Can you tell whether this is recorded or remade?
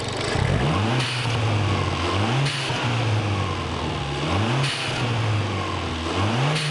recorded